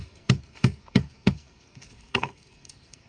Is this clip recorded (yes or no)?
no